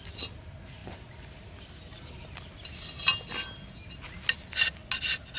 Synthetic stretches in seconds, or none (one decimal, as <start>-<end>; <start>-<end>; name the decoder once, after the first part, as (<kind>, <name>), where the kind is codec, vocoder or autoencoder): none